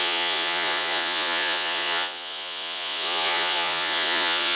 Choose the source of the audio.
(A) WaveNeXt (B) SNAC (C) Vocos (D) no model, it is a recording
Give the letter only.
C